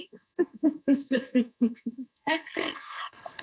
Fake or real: fake